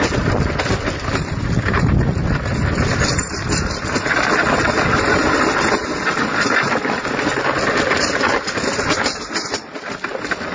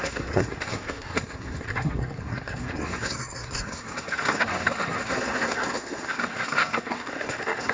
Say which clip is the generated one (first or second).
second